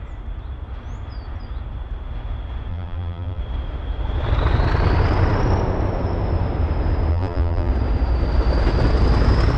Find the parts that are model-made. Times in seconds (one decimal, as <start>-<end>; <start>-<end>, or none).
2.7-3.4; 7.1-7.7